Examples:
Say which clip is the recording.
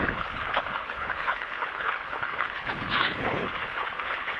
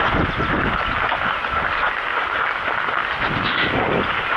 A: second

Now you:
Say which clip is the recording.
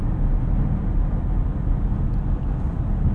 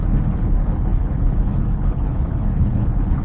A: first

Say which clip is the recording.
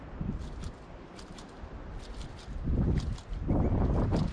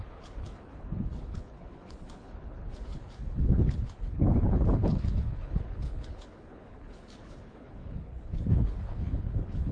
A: first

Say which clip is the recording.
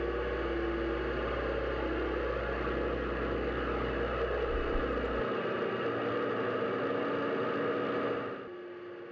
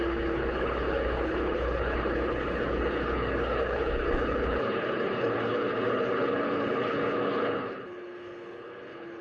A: first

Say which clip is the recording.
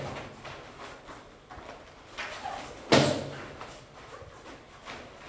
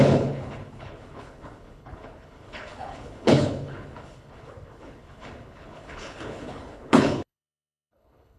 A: first